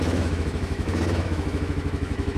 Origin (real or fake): fake